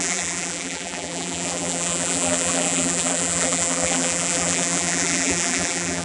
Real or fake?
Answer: fake